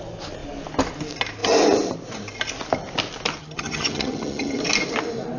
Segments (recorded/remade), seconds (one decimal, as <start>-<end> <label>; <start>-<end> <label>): 0.0-3.4 recorded; 3.4-4.6 remade; 4.6-5.4 recorded